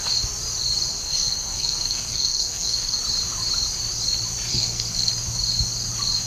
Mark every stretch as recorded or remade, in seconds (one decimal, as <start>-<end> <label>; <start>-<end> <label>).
0.0-0.9 recorded; 0.9-3.0 remade; 3.0-4.5 recorded; 4.5-5.1 remade; 5.1-6.3 recorded